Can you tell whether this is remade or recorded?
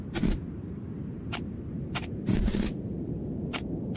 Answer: recorded